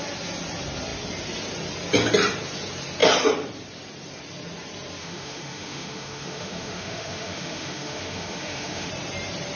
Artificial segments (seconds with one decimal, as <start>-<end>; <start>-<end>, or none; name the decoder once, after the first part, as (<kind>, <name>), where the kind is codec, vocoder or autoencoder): 5.0-8.9 (autoencoder, DAC-VAE)